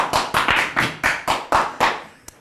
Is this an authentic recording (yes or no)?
yes